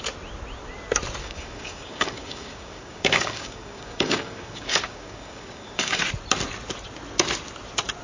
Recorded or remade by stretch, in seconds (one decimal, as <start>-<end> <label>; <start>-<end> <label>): 0.0-1.2 recorded; 1.2-6.0 remade; 6.0-8.0 recorded

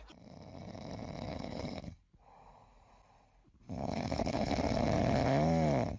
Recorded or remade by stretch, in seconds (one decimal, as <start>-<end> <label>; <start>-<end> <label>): 0.0-1.3 recorded; 1.3-1.9 remade; 1.9-3.8 recorded; 3.8-4.5 remade; 4.5-6.0 recorded

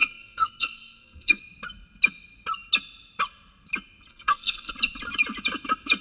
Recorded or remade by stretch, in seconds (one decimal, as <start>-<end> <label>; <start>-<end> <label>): 0.0-1.4 remade; 1.4-4.1 recorded; 4.1-4.7 remade; 4.7-6.0 recorded

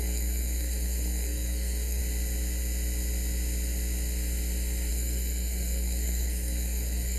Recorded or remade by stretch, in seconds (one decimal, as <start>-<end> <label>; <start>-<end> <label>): 0.0-2.0 remade; 2.0-4.9 recorded; 4.9-7.2 remade